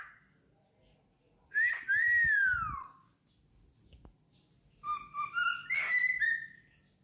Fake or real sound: real